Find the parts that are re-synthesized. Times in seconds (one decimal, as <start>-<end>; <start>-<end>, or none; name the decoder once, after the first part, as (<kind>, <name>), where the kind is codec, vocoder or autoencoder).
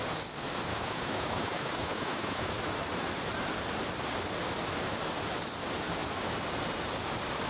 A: 0.7-2.7 (autoencoder, DAC-VAE)